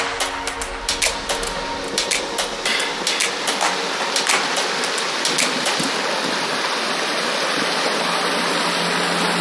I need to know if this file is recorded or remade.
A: recorded